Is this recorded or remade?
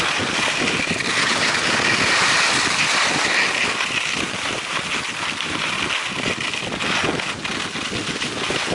recorded